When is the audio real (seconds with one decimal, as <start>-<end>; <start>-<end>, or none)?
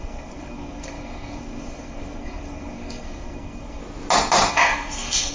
3.8-4.5